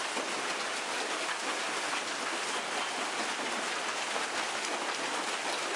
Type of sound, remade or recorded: recorded